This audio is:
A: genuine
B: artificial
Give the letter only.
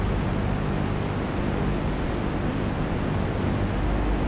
A